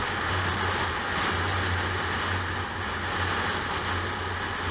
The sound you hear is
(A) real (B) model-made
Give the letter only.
A